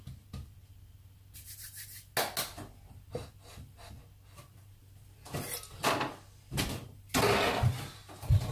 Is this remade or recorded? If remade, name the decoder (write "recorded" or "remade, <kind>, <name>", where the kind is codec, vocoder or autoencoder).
recorded